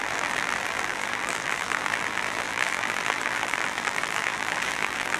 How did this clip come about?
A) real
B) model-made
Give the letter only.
B